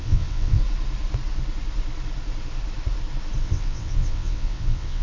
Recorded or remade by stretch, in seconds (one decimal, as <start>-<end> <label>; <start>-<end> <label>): 0.0-0.6 remade; 0.6-3.4 recorded; 3.4-5.0 remade